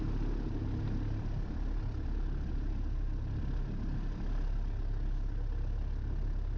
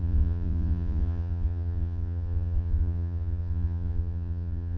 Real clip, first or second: first